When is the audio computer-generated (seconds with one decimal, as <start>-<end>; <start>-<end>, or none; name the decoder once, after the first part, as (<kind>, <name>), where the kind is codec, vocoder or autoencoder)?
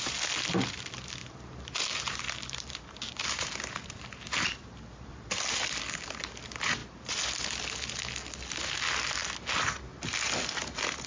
1.2-5.1 (vocoder, BigVGAN v2)